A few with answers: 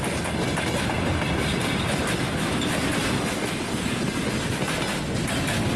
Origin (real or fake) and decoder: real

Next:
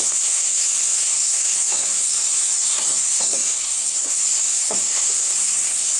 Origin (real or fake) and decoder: fake, codec, SNAC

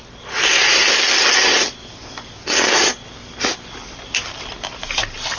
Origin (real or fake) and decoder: real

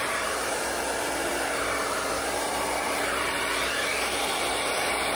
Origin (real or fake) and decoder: fake, vocoder, BigVGAN v2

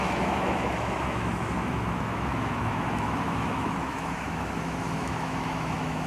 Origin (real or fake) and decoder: fake, autoencoder, DAC-VAE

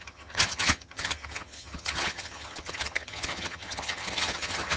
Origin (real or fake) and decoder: fake, vocoder, HiFi-GAN